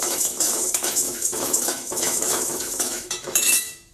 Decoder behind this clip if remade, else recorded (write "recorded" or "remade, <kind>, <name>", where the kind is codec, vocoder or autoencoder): remade, autoencoder, DAC-VAE